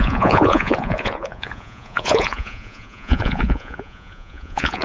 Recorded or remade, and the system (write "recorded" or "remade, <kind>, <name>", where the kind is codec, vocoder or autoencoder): remade, vocoder, Vocos